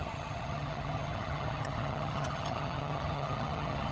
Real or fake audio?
fake